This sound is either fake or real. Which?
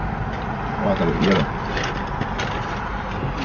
real